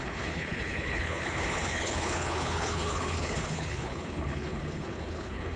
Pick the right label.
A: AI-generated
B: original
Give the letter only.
A